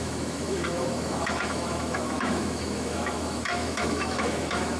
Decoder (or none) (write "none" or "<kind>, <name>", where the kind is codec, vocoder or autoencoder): autoencoder, DAC-VAE